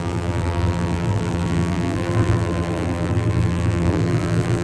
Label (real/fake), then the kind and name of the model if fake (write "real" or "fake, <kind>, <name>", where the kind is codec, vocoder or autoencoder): fake, vocoder, BigVGAN v2